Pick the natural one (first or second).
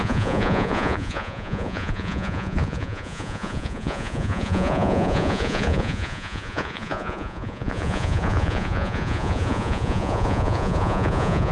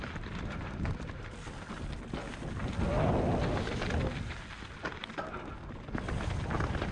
second